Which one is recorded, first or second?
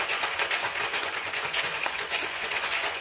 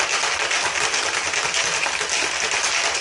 second